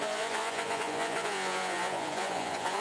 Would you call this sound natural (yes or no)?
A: no